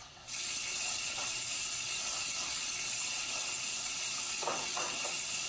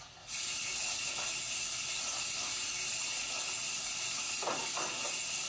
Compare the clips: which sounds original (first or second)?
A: second